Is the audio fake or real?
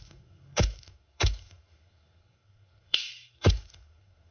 fake